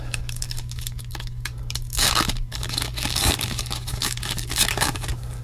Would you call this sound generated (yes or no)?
yes